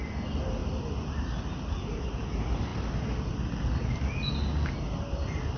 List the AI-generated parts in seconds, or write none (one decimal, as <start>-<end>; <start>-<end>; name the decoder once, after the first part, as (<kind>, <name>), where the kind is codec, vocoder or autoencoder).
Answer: none